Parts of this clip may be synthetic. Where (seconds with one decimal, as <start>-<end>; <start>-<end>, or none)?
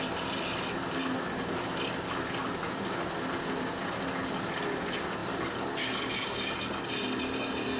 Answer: none